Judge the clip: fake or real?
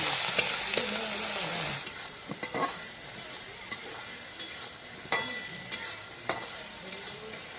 real